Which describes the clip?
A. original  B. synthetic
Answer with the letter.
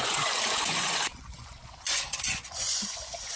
B